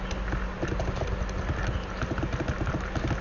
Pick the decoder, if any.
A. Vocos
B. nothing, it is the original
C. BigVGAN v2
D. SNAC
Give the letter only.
B